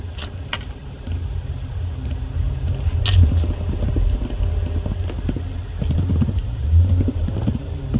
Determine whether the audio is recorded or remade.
recorded